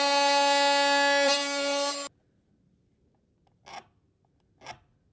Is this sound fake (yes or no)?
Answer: no